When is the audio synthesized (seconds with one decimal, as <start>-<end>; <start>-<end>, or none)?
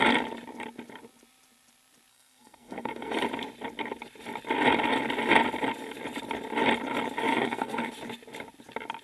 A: 2.1-3.1; 7.3-7.9